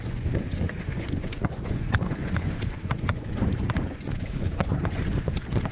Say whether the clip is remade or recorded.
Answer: remade